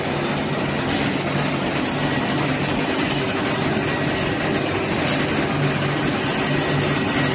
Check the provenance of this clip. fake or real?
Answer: real